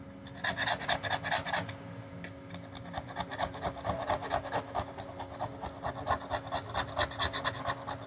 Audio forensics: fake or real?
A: real